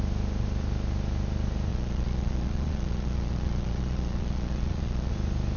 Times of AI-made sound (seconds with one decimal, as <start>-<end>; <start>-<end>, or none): 1.7-5.1